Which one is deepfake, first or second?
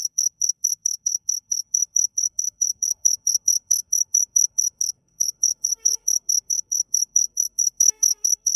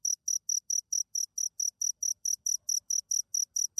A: first